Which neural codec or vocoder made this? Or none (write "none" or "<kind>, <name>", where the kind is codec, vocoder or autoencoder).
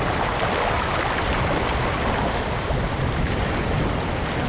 none